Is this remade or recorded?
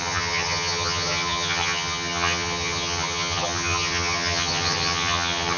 remade